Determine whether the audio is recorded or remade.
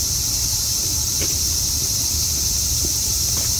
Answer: remade